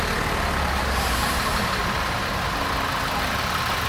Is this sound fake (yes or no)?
no